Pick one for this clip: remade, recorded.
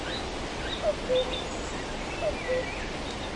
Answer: recorded